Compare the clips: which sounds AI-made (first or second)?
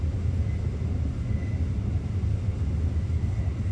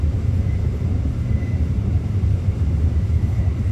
second